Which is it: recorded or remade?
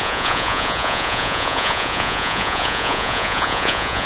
remade